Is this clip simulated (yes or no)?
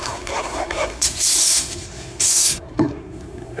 yes